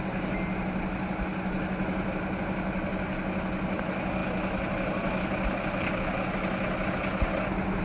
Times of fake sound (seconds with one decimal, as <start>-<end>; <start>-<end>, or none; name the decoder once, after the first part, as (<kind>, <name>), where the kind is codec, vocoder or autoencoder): none